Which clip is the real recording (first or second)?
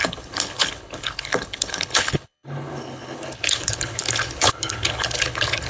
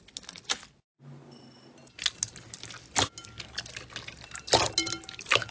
second